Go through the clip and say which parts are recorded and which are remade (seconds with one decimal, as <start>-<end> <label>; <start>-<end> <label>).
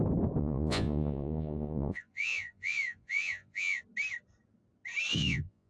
0.0-0.4 recorded; 0.4-3.8 remade; 3.8-5.1 recorded; 5.1-5.7 remade